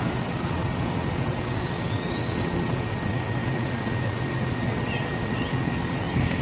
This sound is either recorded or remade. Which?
remade